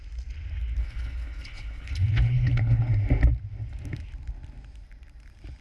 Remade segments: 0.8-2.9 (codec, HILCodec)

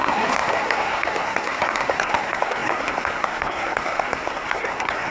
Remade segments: 0.0-5.1 (codec, SNAC)